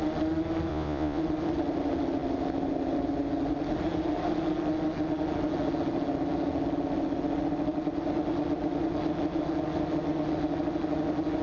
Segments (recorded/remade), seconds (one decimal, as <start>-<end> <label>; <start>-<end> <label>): 0.0-0.7 recorded; 0.7-1.2 remade; 1.2-11.4 recorded